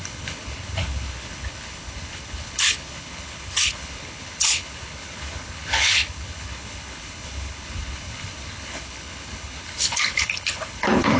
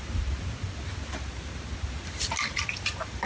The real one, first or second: second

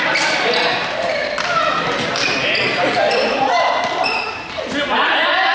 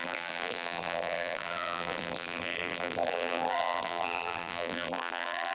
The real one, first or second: first